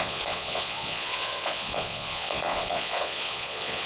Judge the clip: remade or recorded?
remade